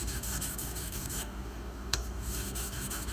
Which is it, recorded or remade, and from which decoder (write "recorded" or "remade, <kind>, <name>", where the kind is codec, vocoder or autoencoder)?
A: remade, codec, DAC